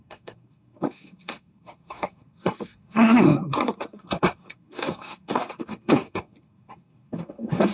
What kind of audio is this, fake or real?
fake